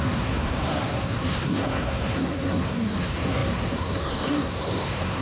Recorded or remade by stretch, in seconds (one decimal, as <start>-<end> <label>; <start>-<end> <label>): 0.0-5.2 remade